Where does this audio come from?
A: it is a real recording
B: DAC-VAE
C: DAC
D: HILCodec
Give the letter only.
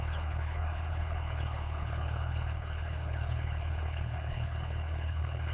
D